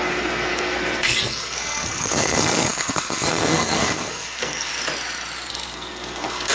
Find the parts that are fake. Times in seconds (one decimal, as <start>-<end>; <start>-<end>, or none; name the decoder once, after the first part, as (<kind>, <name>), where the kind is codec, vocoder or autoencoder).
0.0-4.7 (codec, SNAC); 5.5-6.5

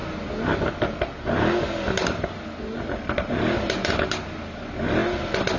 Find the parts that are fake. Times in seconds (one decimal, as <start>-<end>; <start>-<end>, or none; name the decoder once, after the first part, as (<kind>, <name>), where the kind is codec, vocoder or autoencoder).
none

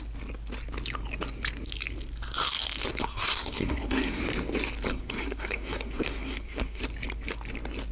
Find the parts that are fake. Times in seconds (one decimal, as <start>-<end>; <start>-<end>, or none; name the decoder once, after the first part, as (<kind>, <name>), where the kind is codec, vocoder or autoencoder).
3.1-4.2 (codec, SNAC); 4.9-6.8

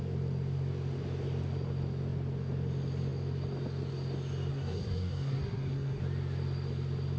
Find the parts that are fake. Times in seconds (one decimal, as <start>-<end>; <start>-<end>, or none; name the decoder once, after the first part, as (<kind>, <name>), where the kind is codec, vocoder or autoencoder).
4.5-6.0 (codec, SNAC)

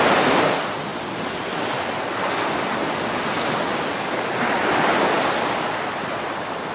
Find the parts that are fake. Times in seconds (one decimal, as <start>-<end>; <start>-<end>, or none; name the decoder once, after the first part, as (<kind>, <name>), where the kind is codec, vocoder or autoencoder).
none

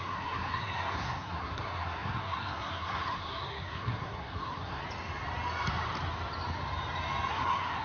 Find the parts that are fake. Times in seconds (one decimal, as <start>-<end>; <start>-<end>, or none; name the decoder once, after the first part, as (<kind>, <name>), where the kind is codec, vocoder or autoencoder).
0.0-4.8 (codec, SNAC); 7.3-7.8